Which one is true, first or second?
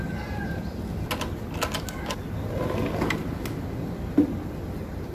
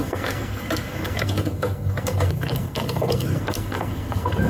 first